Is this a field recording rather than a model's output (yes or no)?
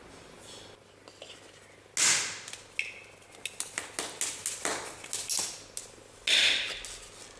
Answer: yes